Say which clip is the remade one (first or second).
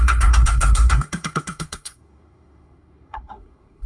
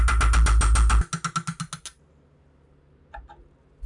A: first